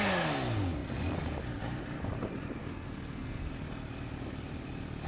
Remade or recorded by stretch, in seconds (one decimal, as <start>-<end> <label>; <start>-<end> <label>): 0.0-2.6 recorded; 2.6-3.5 remade; 3.5-5.1 recorded